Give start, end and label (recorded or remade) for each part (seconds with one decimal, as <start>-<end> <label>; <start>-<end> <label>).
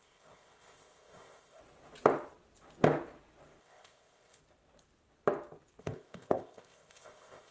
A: 0.0-1.6 remade; 1.6-3.6 recorded; 3.6-4.4 remade; 4.4-5.8 recorded; 5.8-7.5 remade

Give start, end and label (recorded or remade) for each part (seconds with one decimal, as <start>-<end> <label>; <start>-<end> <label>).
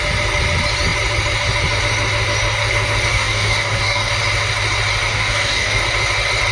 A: 0.0-3.1 recorded; 3.1-4.1 remade; 4.1-5.1 recorded; 5.1-5.8 remade; 5.8-6.5 recorded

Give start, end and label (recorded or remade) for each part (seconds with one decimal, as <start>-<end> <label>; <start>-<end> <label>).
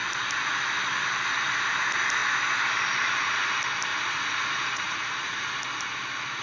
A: 0.0-3.9 recorded; 3.9-5.6 remade; 5.6-6.4 recorded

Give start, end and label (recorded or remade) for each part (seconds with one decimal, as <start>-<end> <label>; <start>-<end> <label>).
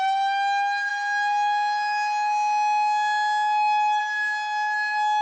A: 0.0-5.2 recorded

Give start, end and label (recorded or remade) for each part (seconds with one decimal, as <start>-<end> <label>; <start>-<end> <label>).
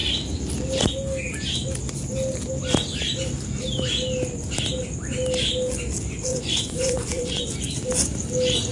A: 0.0-6.3 recorded; 6.3-7.4 remade; 7.4-8.7 recorded